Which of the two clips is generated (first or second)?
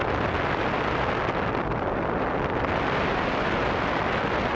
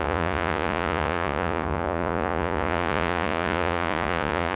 second